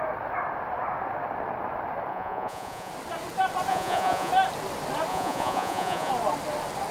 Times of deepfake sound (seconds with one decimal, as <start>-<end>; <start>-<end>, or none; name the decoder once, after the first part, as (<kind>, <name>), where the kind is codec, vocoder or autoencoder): 2.1-2.9 (vocoder, Vocos); 3.7-4.3; 5.1-6.1

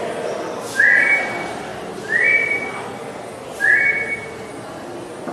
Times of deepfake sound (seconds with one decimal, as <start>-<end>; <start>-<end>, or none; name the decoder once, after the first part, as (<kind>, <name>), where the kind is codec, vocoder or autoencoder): none

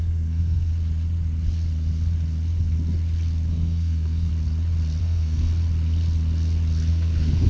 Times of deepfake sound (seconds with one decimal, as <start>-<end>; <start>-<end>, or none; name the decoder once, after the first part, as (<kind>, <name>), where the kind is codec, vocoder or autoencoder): 0.0-0.7 (codec, SNAC); 3.5-4.3; 5.0-5.5; 6.9-7.5

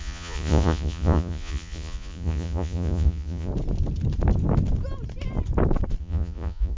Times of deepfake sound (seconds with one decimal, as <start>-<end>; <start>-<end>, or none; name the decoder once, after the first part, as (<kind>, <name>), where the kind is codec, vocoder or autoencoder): 0.0-3.5 (vocoder, Vocos); 6.0-6.8